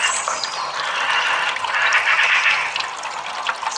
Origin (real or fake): real